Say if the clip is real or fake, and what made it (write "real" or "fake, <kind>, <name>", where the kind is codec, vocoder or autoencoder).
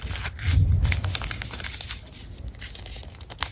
real